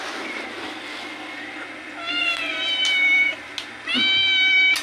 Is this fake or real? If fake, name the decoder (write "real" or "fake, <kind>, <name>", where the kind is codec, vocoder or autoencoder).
real